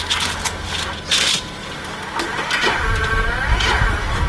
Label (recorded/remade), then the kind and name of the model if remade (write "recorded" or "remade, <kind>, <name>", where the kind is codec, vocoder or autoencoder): recorded